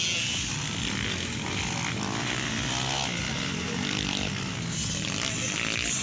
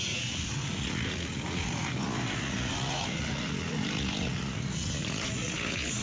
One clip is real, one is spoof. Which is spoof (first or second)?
second